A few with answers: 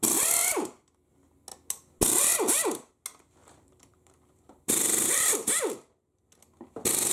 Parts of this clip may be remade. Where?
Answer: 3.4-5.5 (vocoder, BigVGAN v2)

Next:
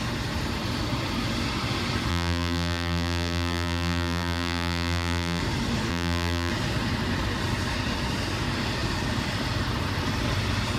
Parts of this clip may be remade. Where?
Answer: 2.1-5.4 (vocoder, BigVGAN v2); 5.9-6.5

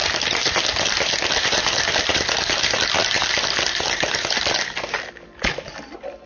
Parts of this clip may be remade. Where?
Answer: 0.0-6.3 (vocoder, BigVGAN v2)

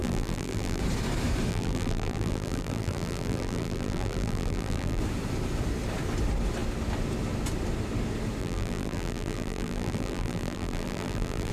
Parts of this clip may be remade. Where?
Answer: 0.0-0.8 (vocoder, BigVGAN v2); 1.5-5.0; 8.4-11.5

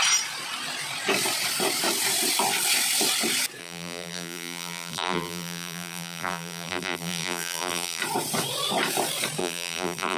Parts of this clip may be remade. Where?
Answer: 3.6-8.0 (vocoder, BigVGAN v2); 9.4-10.2

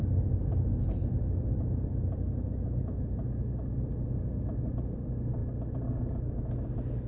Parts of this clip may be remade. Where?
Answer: none